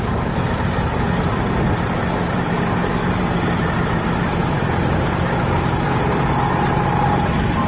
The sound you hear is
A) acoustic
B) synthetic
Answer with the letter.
B